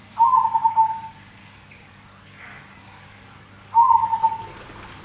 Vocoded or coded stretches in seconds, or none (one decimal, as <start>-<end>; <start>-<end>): 1.4-4.4